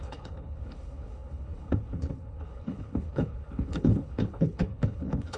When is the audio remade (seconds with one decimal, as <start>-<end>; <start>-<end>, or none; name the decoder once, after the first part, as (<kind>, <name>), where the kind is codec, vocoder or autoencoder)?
0.0-5.4 (codec, HILCodec)